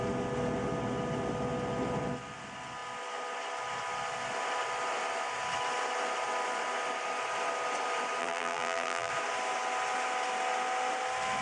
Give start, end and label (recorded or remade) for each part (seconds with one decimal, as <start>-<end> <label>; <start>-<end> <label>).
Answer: 0.0-8.2 recorded; 8.2-9.1 remade; 9.1-11.4 recorded